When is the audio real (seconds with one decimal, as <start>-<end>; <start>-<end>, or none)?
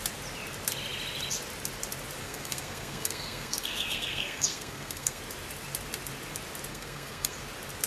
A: 0.0-2.2; 5.2-6.7; 7.4-7.9